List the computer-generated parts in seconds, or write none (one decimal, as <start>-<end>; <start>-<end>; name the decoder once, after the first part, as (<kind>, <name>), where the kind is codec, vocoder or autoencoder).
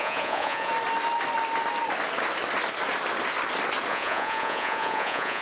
0.0-0.7 (vocoder, Vocos); 3.9-5.4